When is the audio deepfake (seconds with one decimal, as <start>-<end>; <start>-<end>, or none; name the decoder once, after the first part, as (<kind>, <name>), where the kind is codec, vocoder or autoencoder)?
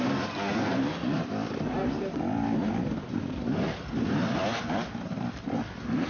0.0-1.8 (vocoder, BigVGAN v2); 3.2-4.4; 5.3-6.1